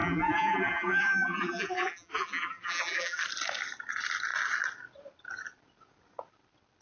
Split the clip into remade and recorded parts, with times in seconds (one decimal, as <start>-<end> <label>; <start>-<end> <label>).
0.0-3.2 remade; 3.2-6.8 recorded